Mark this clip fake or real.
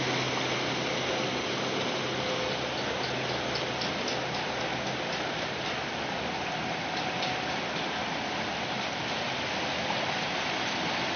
real